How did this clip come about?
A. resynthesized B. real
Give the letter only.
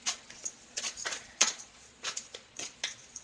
A